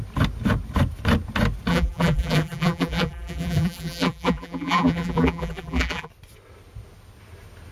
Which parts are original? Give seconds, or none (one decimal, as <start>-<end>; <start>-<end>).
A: 0.0-1.7; 6.1-7.7